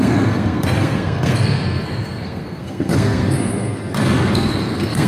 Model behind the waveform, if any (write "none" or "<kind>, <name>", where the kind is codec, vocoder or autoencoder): codec, SNAC